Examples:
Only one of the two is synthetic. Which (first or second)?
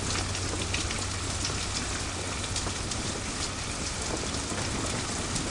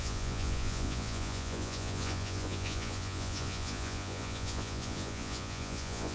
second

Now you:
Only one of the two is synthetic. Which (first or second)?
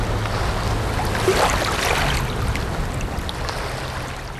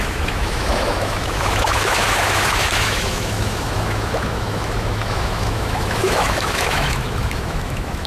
second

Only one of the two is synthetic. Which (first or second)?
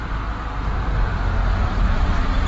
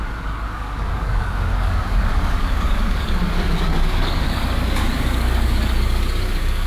second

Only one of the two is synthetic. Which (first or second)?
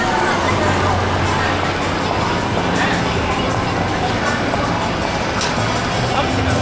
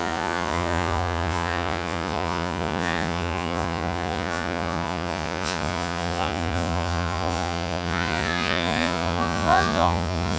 second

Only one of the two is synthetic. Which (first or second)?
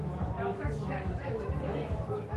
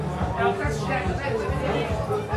first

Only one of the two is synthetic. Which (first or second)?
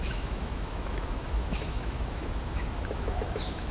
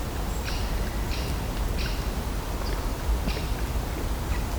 first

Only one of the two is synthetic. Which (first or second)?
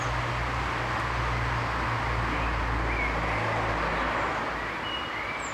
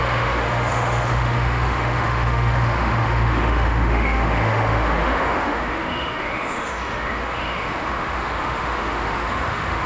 second